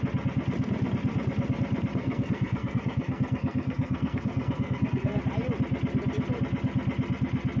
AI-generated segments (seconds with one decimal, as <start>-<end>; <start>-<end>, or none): 2.0-5.2